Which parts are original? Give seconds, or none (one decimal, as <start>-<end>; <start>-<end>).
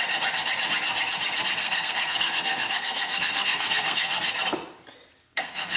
0.0-1.6; 4.3-5.2